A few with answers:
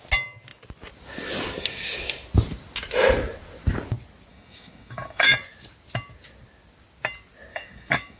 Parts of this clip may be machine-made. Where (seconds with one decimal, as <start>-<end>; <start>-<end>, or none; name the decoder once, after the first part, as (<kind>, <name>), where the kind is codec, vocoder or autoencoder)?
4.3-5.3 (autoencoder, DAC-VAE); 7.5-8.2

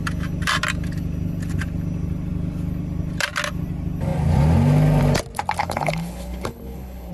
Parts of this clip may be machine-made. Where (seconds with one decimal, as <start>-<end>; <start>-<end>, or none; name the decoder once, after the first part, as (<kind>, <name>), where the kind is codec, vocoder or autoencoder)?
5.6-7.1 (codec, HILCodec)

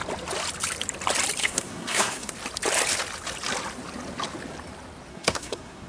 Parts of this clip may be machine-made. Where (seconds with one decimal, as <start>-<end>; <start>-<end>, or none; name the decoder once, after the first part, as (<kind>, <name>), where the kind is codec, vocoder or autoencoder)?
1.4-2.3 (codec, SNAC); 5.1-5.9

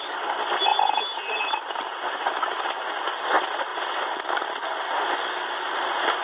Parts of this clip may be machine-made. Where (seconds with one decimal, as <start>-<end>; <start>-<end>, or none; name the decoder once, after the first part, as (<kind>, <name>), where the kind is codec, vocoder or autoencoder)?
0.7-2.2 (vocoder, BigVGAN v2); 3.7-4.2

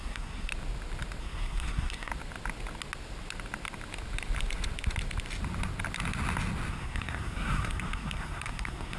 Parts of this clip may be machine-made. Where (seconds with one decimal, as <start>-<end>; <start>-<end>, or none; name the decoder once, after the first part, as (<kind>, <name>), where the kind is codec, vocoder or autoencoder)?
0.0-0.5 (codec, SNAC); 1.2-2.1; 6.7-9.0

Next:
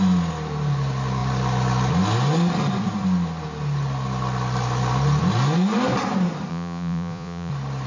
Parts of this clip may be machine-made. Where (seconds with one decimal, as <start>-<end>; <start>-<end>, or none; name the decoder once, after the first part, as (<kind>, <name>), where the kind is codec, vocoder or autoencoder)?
6.5-7.5 (vocoder, Vocos)

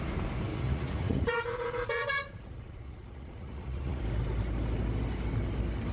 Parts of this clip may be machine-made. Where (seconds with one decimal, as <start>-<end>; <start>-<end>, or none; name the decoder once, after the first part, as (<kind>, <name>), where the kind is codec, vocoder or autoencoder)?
0.5-4.0 (vocoder, Vocos)

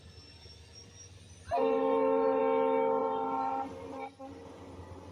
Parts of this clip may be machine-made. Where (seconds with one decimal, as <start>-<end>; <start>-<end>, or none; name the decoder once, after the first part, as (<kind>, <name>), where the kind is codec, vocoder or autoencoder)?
1.6-2.4 (vocoder, BigVGAN v2); 3.0-4.2